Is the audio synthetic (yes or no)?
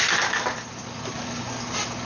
no